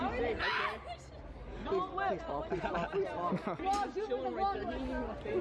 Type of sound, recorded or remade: recorded